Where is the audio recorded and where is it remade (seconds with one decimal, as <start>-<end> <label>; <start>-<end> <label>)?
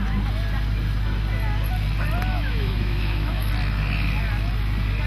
0.0-2.3 recorded; 2.3-3.5 remade; 3.5-5.1 recorded